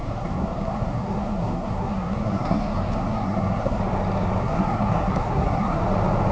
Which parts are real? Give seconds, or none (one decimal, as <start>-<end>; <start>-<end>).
3.8-4.4; 5.8-6.3